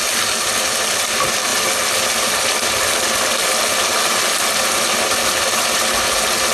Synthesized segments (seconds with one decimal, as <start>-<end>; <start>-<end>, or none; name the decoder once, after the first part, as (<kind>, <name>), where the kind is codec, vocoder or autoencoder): none